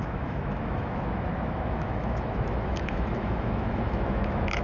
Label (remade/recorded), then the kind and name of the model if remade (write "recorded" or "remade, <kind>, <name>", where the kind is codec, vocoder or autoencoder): remade, autoencoder, DAC-VAE